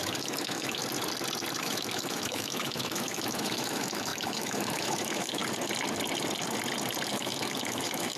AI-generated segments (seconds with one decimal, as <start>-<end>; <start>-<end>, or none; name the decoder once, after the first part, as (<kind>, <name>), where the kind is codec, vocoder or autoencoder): 0.0-0.8 (autoencoder, DAC-VAE); 1.6-5.4; 7.1-8.2